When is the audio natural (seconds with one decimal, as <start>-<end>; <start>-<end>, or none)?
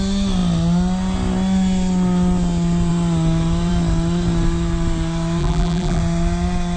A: 0.0-5.4; 6.0-6.8